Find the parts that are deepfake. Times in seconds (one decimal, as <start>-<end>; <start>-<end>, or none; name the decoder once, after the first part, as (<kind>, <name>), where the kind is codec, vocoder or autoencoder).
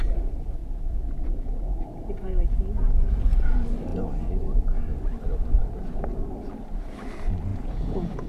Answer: 0.6-2.1 (vocoder, Vocos); 7.5-8.3